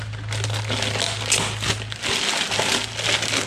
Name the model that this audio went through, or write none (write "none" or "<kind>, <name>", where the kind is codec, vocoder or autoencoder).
none